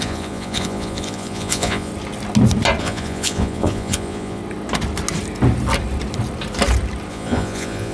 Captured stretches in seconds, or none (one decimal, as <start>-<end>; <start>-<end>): 1.9-2.8; 4.4-7.1